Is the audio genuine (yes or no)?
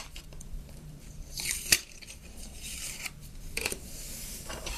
no